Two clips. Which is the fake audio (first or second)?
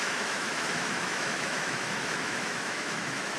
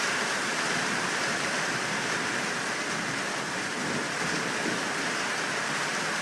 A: first